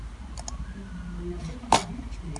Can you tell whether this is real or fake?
real